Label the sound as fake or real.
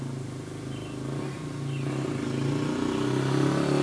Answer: real